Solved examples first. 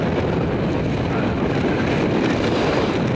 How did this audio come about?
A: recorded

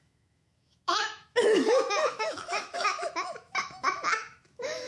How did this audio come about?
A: remade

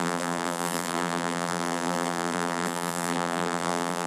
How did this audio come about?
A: remade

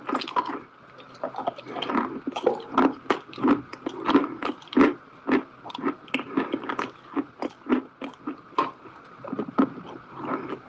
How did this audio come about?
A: recorded